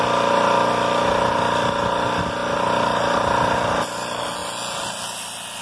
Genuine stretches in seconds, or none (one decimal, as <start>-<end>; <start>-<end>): 0.0-5.6